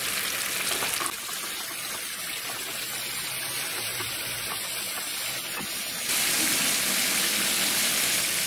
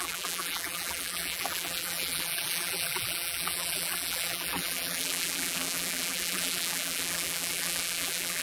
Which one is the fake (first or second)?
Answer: second